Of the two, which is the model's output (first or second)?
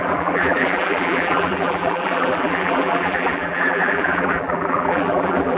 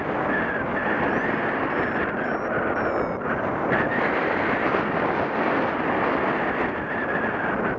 first